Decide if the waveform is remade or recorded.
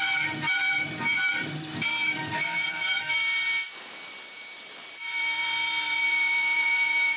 remade